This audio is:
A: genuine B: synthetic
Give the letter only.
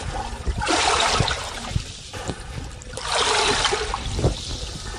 A